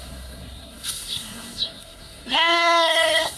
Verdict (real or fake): fake